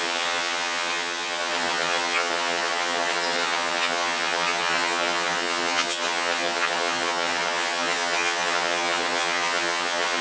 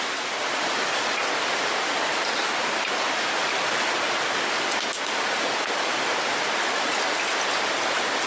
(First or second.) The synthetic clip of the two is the first